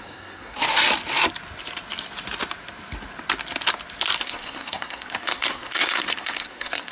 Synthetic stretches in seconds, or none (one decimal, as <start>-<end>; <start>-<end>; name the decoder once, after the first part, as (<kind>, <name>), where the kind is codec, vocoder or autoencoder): 0.0-0.6 (codec, SNAC); 4.2-6.9